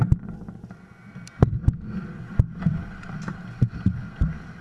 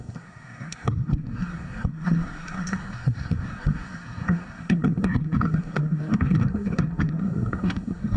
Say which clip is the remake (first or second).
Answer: second